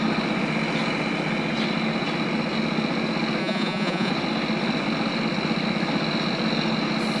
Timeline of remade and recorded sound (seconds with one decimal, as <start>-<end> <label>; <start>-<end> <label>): 0.0-3.4 recorded; 3.4-4.1 remade; 4.1-7.2 recorded